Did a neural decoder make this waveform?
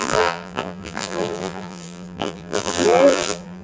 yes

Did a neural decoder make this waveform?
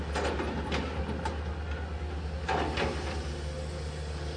no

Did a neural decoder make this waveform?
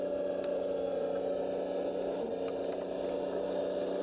no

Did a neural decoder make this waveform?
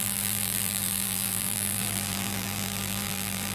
yes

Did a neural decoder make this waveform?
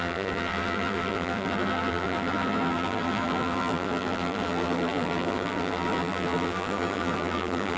yes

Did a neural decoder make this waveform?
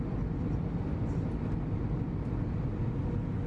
no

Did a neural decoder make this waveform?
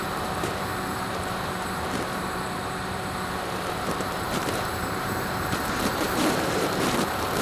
yes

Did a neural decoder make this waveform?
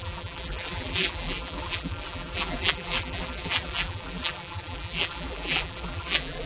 yes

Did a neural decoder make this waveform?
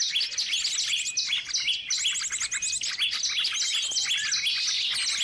no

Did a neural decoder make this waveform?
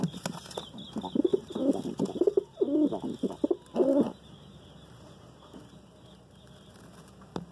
no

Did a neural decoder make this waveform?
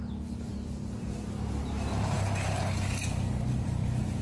no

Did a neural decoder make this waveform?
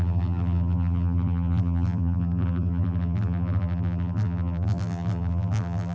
yes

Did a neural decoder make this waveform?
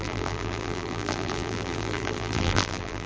yes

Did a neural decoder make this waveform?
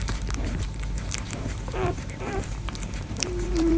yes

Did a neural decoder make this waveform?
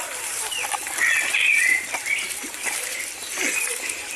yes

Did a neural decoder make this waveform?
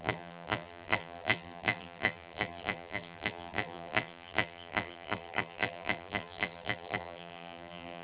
yes